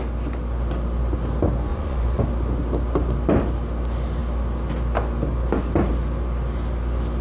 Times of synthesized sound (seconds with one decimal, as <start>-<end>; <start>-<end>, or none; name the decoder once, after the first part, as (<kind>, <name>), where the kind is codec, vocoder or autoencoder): 1.7-2.2 (vocoder, Vocos)